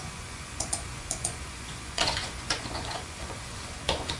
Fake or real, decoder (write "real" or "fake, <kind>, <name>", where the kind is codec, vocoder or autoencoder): fake, vocoder, Vocos